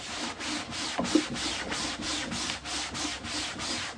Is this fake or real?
real